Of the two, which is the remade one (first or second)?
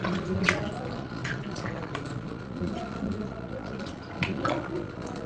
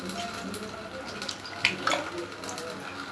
first